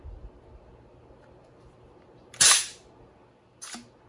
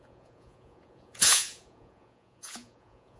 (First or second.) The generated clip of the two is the second